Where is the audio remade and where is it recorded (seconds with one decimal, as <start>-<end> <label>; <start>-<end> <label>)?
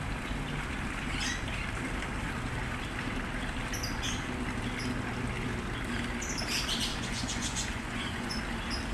0.0-6.9 recorded; 6.9-8.4 remade; 8.4-8.9 recorded